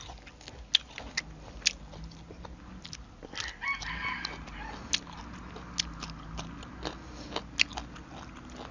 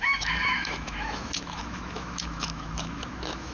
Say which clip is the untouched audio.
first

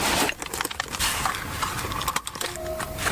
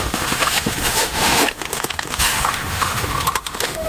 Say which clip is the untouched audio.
first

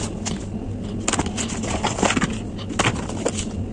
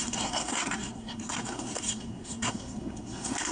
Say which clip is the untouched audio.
first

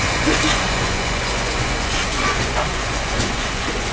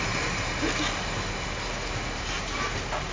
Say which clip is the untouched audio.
second